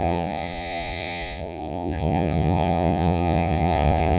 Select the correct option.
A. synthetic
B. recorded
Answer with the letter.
A